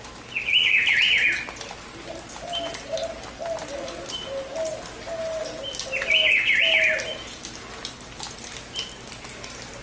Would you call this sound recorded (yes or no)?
yes